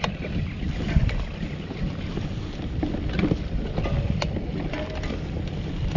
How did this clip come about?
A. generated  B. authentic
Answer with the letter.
B